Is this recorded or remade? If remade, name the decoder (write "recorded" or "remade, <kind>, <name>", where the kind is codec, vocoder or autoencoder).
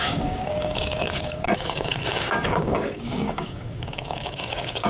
remade, codec, DAC